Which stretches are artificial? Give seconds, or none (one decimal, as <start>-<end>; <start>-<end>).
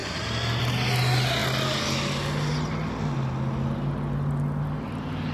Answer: none